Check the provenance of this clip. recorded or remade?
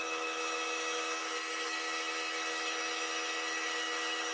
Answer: remade